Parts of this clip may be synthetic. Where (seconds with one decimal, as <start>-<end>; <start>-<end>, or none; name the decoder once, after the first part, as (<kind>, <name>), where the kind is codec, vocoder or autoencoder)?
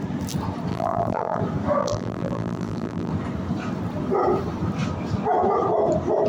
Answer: 0.7-1.4 (vocoder, BigVGAN v2); 1.8-3.1